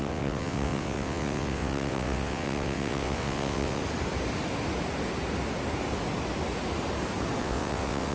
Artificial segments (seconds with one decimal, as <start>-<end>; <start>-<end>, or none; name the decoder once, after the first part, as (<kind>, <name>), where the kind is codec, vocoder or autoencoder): 0.0-3.8 (vocoder, WaveNeXt); 7.4-8.1